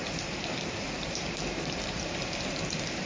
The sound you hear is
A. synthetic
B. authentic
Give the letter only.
A